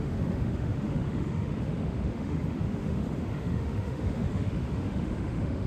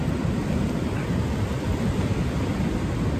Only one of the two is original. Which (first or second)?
second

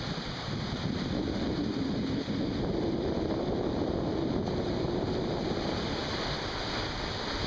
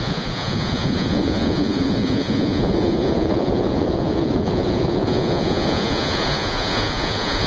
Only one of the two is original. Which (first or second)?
first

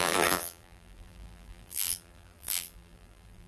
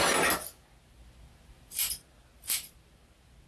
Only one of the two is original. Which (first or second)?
second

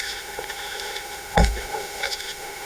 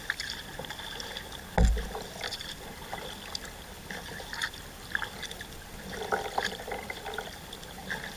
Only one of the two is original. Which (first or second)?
second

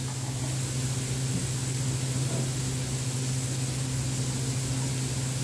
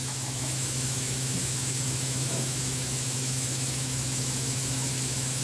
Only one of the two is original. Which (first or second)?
first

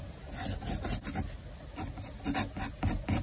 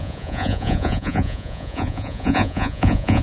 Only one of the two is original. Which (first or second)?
first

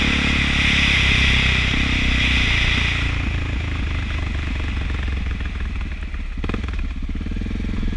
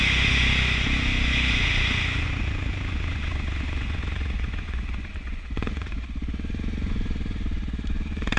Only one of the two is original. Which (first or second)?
first